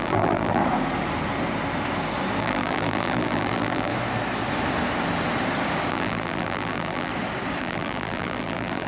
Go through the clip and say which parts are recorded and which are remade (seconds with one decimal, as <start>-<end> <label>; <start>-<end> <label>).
0.0-0.6 remade; 0.6-2.4 recorded; 2.4-3.9 remade; 3.9-5.9 recorded; 5.9-7.1 remade; 7.1-7.6 recorded; 7.6-8.9 remade